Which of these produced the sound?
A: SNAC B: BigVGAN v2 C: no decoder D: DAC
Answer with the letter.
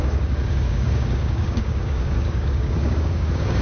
D